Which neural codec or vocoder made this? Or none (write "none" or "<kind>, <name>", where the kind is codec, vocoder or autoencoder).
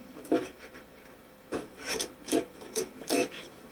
autoencoder, DAC-VAE